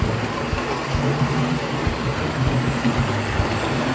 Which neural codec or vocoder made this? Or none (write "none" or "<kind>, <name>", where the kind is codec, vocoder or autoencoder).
none